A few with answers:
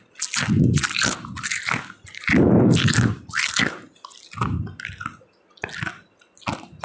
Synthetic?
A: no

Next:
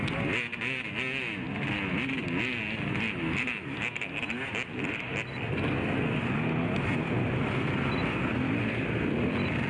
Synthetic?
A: no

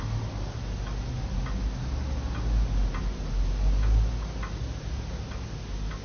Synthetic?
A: no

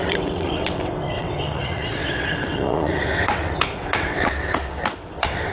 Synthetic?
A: yes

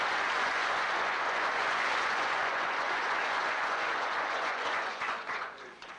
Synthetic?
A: yes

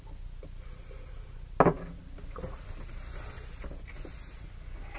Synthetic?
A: no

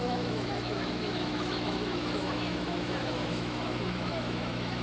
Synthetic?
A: yes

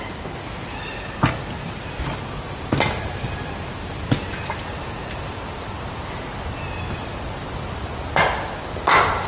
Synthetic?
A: no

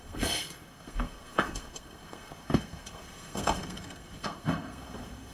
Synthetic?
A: yes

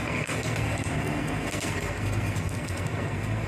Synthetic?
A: yes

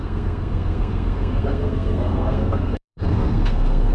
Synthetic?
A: yes